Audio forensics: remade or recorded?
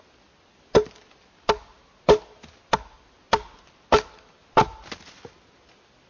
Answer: recorded